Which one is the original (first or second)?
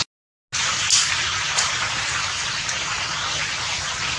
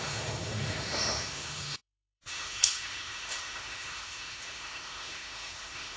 first